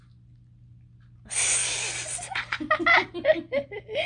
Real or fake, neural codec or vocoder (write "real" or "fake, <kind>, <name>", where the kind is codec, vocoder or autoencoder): real